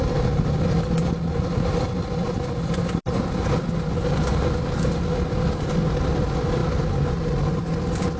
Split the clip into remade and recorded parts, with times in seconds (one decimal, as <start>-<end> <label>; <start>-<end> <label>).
0.0-8.2 recorded

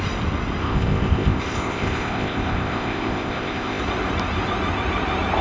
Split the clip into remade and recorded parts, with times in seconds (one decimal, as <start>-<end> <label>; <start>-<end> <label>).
0.0-0.6 recorded; 0.6-3.8 remade; 3.8-5.4 recorded

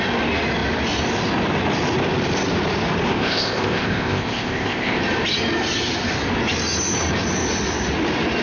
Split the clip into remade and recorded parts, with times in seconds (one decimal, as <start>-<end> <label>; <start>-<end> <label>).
0.0-3.1 recorded; 3.1-5.0 remade; 5.0-8.4 recorded